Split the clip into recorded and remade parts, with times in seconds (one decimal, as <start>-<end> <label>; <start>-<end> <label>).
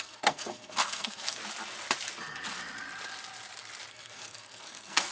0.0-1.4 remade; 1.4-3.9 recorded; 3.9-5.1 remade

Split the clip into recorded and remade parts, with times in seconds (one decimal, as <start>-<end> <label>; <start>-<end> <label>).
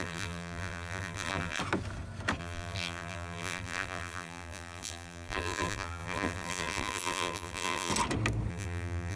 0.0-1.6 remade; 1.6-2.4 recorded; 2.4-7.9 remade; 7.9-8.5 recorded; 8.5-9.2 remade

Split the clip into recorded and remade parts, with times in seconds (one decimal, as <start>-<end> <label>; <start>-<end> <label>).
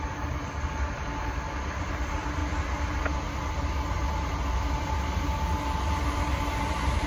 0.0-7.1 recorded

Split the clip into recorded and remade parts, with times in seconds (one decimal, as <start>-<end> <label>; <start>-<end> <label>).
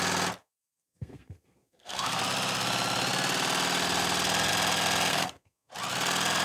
0.0-0.4 recorded; 0.4-2.2 remade; 2.2-5.1 recorded; 5.1-5.7 remade; 5.7-6.4 recorded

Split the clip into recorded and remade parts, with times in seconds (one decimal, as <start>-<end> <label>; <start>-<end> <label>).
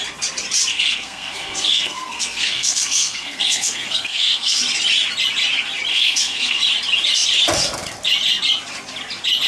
0.0-0.7 recorded; 0.7-4.6 remade; 4.6-5.9 recorded; 5.9-6.6 remade; 6.6-9.5 recorded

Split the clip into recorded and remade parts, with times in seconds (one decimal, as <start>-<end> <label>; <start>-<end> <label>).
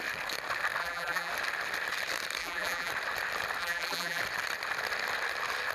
0.0-0.8 recorded; 0.8-1.3 remade; 1.3-2.4 recorded; 2.4-2.9 remade; 2.9-3.6 recorded; 3.6-4.2 remade; 4.2-5.7 recorded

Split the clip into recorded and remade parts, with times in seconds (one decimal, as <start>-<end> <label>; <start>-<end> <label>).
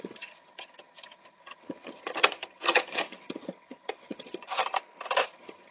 0.0-4.6 remade; 4.6-5.2 recorded; 5.2-5.7 remade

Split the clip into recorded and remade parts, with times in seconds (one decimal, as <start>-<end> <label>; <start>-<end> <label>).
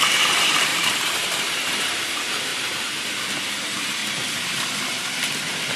0.0-2.5 remade; 2.5-3.4 recorded; 3.4-4.0 remade; 4.0-5.8 recorded